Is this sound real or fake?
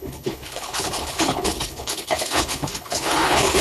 fake